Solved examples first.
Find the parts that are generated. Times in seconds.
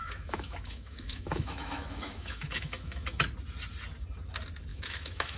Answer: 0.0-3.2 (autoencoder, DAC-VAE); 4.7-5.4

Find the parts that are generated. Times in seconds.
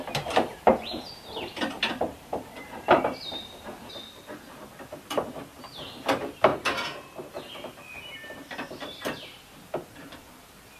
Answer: 0.7-3.9 (vocoder, BigVGAN v2); 6.5-7.3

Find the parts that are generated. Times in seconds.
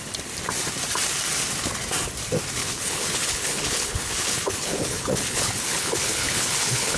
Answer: 2.6-7.0 (codec, HILCodec)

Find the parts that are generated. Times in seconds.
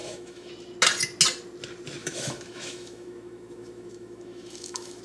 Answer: 0.0-0.5 (autoencoder, DAC-VAE); 2.0-5.0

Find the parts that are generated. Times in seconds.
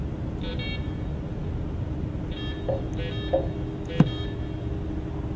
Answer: none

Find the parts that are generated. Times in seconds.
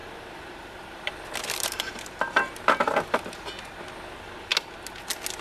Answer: 0.0-1.9 (vocoder, BigVGAN v2)